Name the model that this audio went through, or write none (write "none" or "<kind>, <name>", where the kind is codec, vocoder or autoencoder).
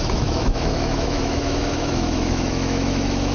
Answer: autoencoder, DAC-VAE